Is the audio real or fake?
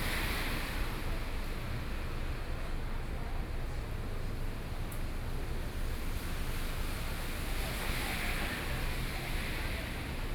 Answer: real